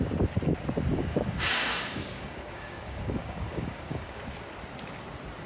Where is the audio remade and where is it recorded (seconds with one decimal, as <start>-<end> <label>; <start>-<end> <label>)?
0.0-0.9 recorded; 0.9-4.2 remade; 4.2-5.5 recorded